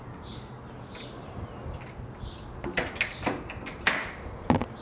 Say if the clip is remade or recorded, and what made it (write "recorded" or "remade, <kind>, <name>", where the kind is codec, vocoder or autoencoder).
recorded